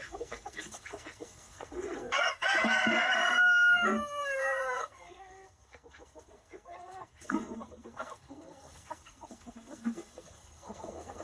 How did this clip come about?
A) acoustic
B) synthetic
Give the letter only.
B